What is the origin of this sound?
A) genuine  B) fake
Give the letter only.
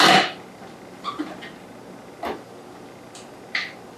A